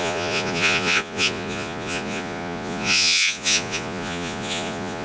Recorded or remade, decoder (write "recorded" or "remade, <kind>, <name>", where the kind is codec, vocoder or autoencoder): remade, vocoder, Vocos